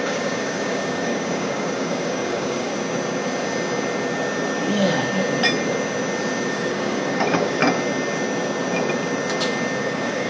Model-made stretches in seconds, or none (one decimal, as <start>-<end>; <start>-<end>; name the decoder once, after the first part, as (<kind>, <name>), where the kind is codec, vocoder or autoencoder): 0.0-2.7 (codec, DAC); 6.5-7.6; 9.8-10.3